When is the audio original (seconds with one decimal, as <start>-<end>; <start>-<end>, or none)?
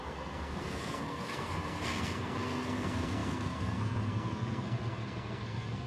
none